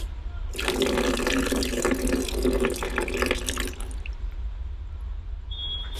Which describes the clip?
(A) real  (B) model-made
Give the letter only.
A